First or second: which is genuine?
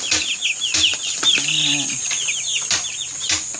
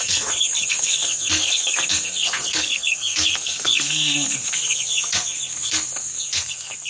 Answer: first